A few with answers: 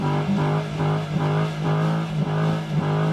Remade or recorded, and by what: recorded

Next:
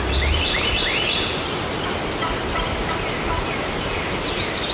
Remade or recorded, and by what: recorded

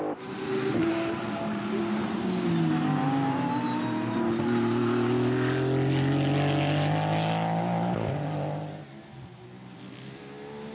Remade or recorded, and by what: recorded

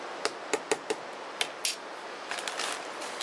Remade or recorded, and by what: recorded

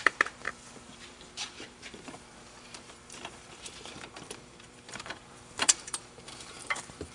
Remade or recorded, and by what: remade, vocoder, BigVGAN v2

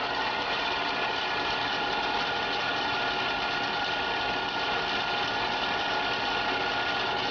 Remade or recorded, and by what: recorded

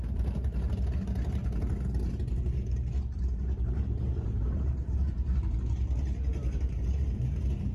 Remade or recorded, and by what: remade, vocoder, BigVGAN v2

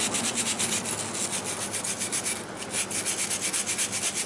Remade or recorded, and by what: recorded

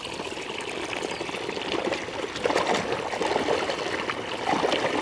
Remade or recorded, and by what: recorded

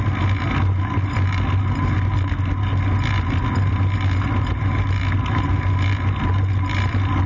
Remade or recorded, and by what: recorded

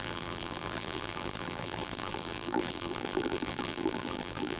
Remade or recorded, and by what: remade, vocoder, BigVGAN v2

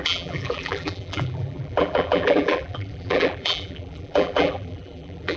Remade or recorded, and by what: remade, vocoder, BigVGAN v2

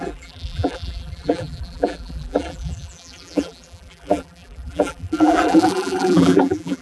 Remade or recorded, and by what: remade, vocoder, BigVGAN v2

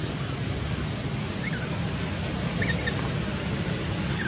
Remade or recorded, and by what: recorded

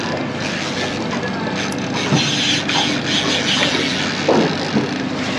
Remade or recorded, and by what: recorded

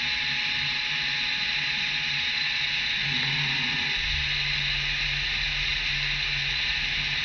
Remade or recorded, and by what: recorded